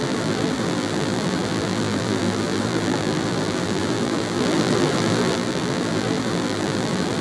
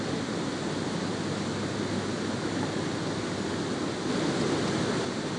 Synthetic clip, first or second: first